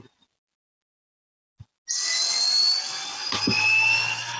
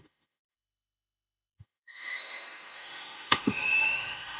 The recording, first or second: first